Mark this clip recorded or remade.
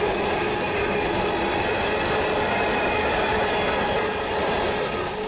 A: recorded